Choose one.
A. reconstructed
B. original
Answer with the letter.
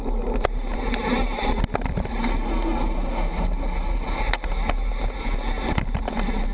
B